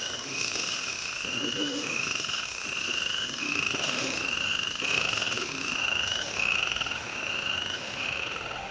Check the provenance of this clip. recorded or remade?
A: remade